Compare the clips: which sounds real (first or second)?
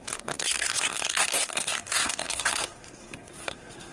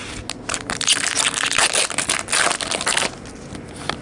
second